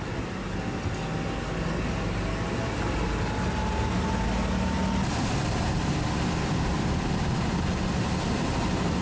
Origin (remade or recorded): recorded